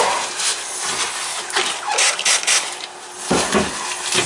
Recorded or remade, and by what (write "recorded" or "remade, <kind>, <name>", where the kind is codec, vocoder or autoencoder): recorded